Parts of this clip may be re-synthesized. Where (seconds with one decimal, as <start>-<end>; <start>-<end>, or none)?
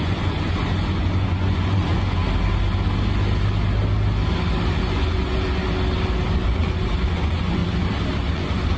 0.0-2.2; 4.7-5.6; 6.7-7.6; 8.2-8.8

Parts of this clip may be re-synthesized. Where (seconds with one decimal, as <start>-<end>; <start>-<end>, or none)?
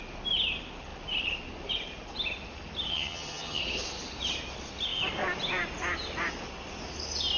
2.9-3.6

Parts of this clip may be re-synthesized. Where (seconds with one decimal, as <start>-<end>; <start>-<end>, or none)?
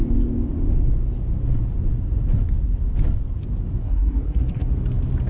3.8-4.7